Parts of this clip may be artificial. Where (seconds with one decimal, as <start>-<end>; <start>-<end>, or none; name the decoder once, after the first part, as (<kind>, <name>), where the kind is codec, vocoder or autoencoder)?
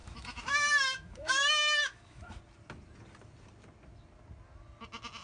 0.0-2.4 (autoencoder, DAC-VAE)